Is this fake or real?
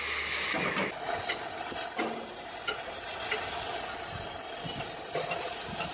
real